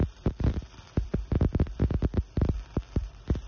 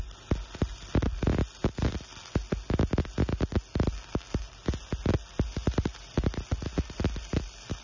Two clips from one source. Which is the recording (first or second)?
second